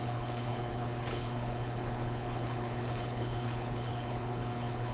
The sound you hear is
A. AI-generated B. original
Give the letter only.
A